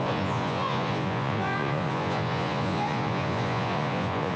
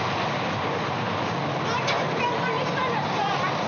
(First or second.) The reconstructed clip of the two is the first